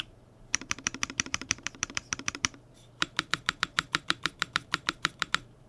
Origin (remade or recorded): remade